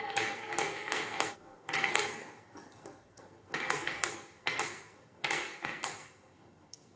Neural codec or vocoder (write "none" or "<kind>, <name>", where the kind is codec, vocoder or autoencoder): codec, SNAC